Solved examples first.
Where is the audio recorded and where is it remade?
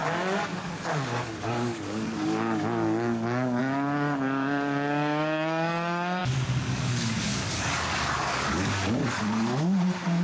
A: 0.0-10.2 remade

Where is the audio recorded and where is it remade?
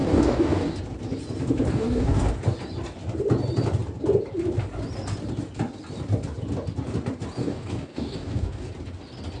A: 0.0-0.8 remade; 0.8-1.7 recorded; 1.7-2.3 remade; 2.3-7.4 recorded; 7.4-8.7 remade; 8.7-9.4 recorded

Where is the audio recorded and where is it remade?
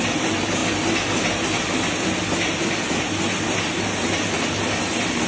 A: 0.0-5.3 recorded